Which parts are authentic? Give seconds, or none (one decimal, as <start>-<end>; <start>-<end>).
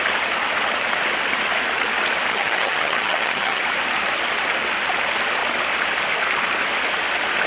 0.0-2.3; 3.6-7.5